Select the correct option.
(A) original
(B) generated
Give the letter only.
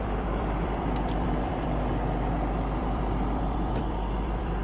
B